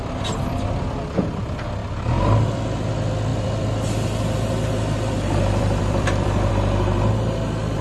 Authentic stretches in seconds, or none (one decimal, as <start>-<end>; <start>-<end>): 0.0-1.8; 2.9-3.3; 6.5-7.8